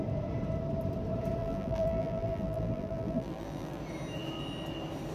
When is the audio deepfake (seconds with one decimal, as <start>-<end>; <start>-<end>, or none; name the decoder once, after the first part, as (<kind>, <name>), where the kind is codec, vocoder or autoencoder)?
1.4-3.8 (vocoder, BigVGAN v2)